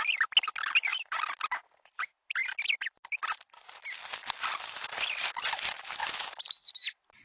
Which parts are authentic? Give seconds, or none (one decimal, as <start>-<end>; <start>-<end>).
0.0-7.2